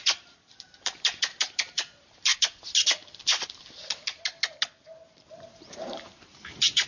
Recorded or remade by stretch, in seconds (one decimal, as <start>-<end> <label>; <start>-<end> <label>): 0.0-2.3 remade; 2.3-5.4 recorded; 5.4-6.9 remade